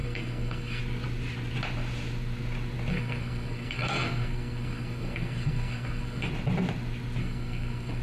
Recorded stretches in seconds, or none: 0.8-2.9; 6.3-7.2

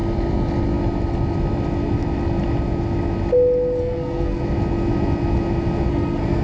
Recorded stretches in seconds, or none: 0.0-3.8; 4.4-5.9

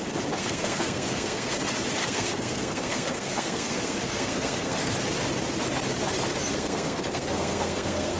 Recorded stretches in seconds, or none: 0.0-0.4; 1.5-2.0; 4.9-6.5

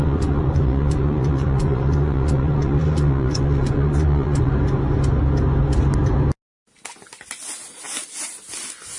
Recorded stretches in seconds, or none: 4.5-9.0

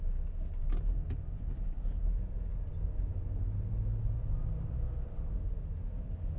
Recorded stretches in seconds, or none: 0.0-6.4

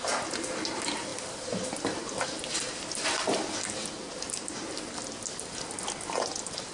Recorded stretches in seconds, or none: 0.0-6.7

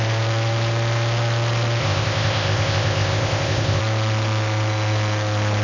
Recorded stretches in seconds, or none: 0.0-1.8; 3.8-5.6